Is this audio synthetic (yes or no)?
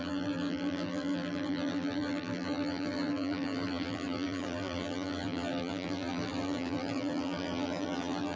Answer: yes